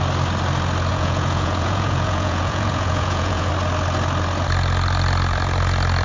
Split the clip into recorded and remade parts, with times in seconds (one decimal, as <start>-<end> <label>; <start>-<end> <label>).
0.0-0.9 recorded; 0.9-3.5 remade; 3.5-6.0 recorded